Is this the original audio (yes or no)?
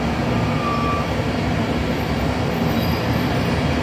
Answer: yes